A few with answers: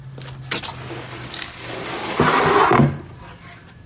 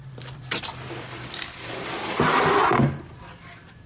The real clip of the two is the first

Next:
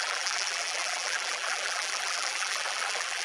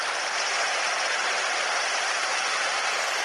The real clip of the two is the second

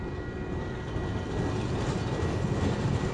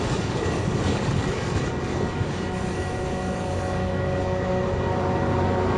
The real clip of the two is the first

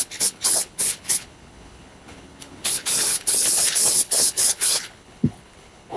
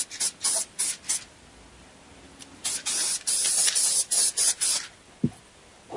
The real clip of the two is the second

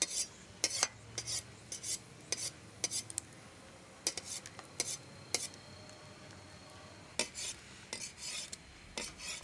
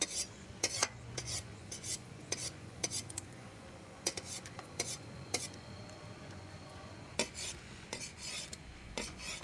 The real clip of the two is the first